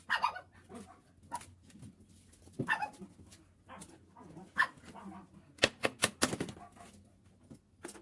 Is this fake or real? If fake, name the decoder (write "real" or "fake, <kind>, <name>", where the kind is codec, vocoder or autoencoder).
real